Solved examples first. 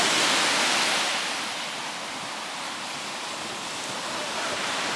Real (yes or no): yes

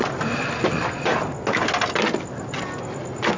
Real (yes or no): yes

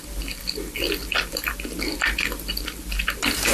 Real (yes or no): yes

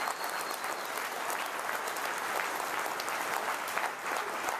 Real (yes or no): yes